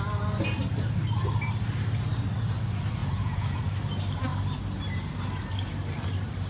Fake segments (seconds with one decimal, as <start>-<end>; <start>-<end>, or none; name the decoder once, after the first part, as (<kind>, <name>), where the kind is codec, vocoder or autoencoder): 3.0-3.6 (vocoder, Vocos)